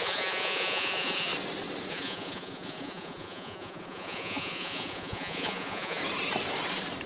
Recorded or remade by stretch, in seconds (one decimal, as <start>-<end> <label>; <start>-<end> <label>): 0.0-1.3 remade; 1.3-1.9 recorded; 1.9-6.0 remade; 6.0-7.1 recorded